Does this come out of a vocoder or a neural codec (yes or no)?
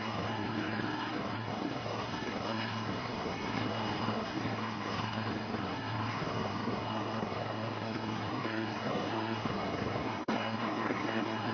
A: yes